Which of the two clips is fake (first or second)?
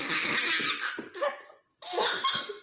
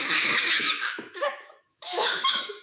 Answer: second